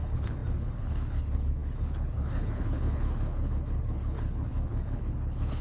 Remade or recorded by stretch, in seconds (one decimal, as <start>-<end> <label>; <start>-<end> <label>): 0.0-5.6 remade